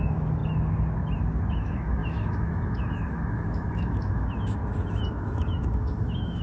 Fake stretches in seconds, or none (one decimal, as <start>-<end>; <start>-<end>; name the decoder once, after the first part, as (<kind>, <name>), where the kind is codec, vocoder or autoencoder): 0.0-0.4 (autoencoder, DAC-VAE); 1.5-4.6; 5.1-6.4